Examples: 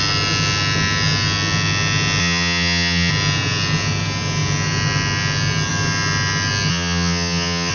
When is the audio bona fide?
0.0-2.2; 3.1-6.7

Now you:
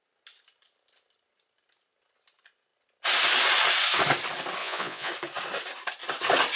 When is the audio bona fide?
0.0-4.6; 5.1-6.6